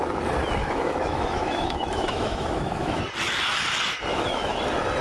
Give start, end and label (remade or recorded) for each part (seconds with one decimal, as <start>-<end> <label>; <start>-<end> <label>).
0.0-0.6 recorded; 0.6-3.0 remade; 3.0-4.1 recorded; 4.1-4.6 remade; 4.6-5.0 recorded